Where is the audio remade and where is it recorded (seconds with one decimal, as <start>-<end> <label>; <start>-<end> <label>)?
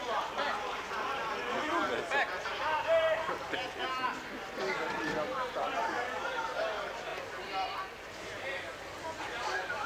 0.0-1.7 remade; 1.7-6.6 recorded; 6.6-7.1 remade; 7.1-9.2 recorded; 9.2-9.9 remade